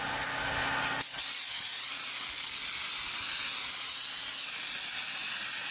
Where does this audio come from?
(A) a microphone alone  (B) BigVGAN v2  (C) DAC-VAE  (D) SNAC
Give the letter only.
A